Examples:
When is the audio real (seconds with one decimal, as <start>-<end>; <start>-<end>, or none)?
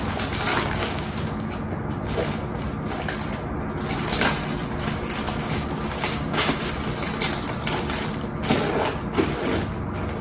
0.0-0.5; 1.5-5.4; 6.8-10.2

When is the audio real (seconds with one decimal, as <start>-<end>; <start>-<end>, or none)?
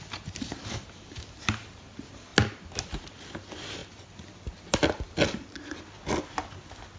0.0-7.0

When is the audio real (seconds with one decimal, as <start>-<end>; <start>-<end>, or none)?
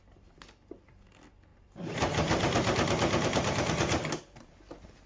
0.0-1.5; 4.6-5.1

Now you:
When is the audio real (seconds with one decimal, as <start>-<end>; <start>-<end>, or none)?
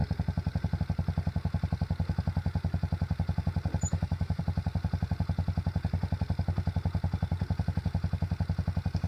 0.0-3.9; 4.4-9.1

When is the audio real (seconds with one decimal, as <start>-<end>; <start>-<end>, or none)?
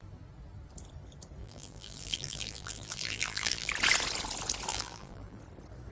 0.0-1.4; 3.7-4.7; 5.4-5.9